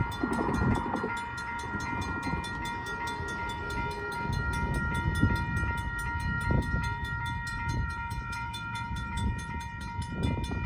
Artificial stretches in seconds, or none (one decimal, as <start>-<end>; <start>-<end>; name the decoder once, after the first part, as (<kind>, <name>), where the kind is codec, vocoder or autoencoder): 7.5-9.8 (vocoder, Vocos)